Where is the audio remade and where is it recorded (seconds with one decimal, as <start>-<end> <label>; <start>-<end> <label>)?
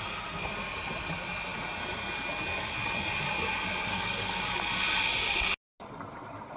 0.0-3.9 recorded; 3.9-4.4 remade; 4.4-6.6 recorded